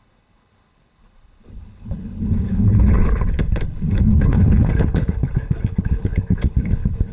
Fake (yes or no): yes